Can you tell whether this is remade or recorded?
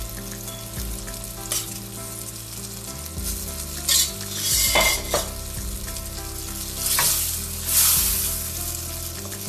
recorded